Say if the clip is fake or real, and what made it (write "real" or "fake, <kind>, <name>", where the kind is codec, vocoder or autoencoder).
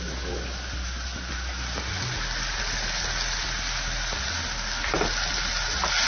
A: real